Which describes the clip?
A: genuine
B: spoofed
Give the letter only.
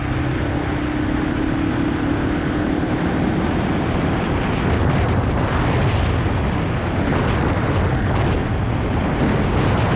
A